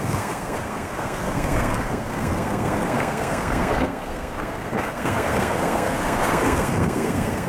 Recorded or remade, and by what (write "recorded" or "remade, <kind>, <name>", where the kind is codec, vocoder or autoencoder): remade, codec, SNAC